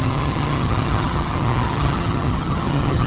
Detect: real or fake fake